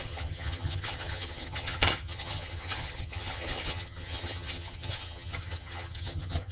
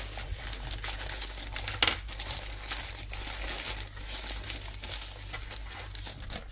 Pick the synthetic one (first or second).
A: first